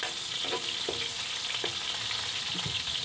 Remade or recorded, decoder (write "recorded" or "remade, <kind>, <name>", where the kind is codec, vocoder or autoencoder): recorded